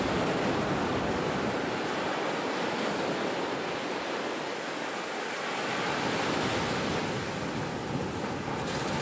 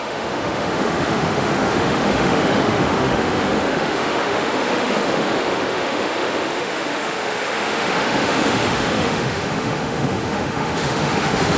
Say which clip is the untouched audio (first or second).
first